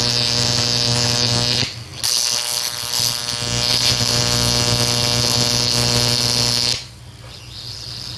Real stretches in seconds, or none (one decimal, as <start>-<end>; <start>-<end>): 0.0-3.7; 4.2-8.2